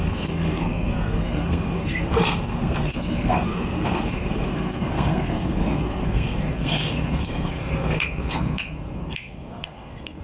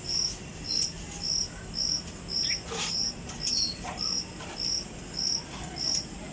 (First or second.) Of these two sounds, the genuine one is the second